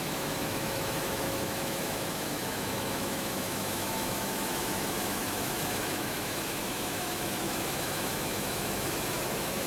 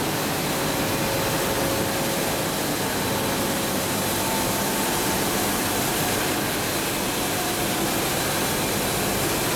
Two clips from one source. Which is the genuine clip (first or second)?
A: second